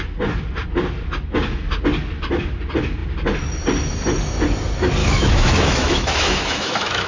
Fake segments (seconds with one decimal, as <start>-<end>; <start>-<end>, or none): 5.0-7.1

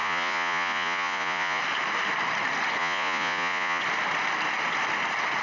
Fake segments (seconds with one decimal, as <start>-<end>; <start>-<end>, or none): 0.0-1.6; 2.8-3.8

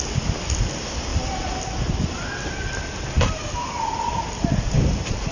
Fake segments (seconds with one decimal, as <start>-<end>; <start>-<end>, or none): none

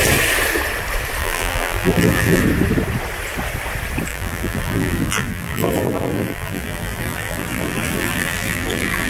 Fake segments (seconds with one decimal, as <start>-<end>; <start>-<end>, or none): 1.2-2.4; 4.1-9.1

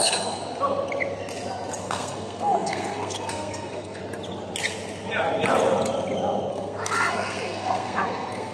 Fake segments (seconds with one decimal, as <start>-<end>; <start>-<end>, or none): 0.0-0.4; 1.8-4.0; 6.5-8.5